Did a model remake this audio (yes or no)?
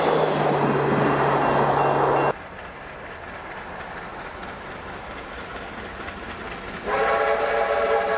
no